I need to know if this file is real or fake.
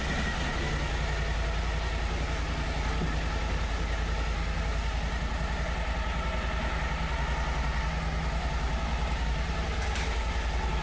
real